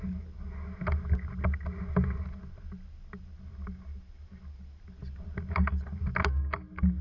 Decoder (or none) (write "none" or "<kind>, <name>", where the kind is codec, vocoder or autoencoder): none